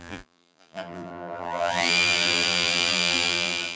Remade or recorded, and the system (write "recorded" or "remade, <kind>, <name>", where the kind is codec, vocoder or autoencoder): remade, vocoder, BigVGAN v2